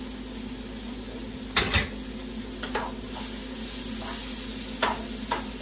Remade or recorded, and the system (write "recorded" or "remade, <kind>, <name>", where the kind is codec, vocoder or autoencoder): recorded